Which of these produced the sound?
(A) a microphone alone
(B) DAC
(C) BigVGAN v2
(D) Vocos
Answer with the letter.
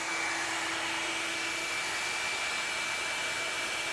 A